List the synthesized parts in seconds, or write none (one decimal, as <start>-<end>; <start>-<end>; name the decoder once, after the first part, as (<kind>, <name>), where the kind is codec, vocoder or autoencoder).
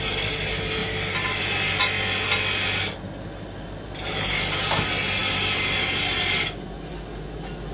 none